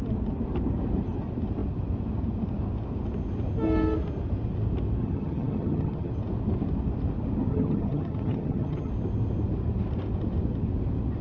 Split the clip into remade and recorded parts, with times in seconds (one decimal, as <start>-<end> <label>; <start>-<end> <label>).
0.0-5.0 recorded; 5.0-6.1 remade; 6.1-7.5 recorded; 7.5-8.9 remade; 8.9-11.2 recorded